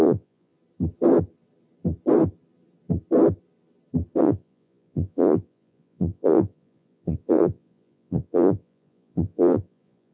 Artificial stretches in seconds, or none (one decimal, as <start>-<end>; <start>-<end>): 0.0-0.5; 4.2-10.1